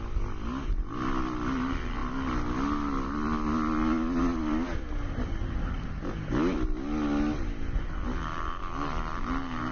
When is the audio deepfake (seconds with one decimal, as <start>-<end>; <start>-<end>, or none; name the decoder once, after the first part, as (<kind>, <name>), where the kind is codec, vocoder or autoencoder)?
none